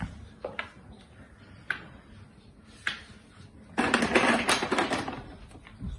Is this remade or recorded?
recorded